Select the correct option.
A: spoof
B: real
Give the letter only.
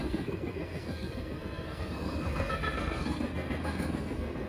A